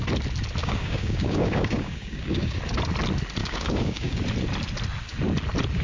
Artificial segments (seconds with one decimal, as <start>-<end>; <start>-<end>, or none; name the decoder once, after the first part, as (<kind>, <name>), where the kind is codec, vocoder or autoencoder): 0.6-2.6 (codec, DAC); 3.4-4.2